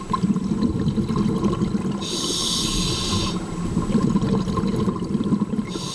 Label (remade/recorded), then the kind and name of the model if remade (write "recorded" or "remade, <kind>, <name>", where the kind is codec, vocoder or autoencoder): recorded